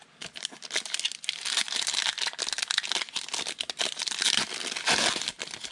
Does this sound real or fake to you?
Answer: real